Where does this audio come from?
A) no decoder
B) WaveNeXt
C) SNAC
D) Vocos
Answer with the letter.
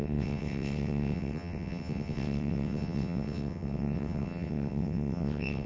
B